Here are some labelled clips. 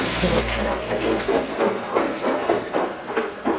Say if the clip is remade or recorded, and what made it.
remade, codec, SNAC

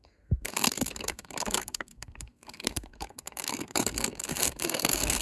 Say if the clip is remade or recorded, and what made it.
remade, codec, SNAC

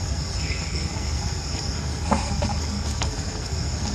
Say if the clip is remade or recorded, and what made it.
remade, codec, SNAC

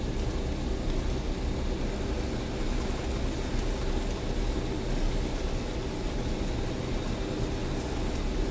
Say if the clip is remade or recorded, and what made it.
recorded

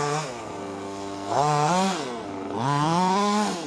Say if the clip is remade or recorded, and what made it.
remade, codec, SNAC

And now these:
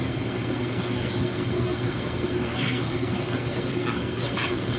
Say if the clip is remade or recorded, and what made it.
remade, codec, SNAC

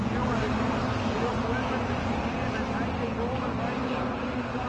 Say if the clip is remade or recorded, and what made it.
recorded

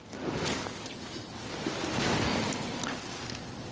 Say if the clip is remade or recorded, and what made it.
recorded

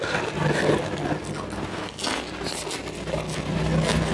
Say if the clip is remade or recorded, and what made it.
recorded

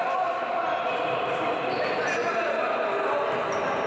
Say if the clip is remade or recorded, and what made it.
recorded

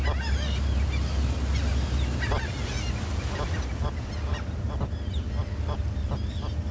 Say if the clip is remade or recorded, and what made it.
recorded